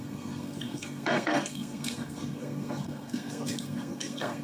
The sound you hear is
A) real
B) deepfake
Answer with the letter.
B